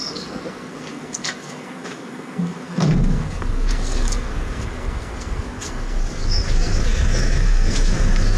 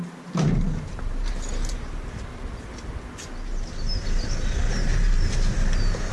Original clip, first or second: second